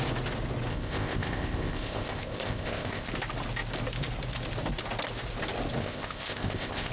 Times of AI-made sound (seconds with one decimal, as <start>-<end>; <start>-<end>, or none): 0.7-3.1; 5.8-6.9